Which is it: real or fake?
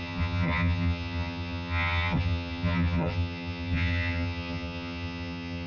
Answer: fake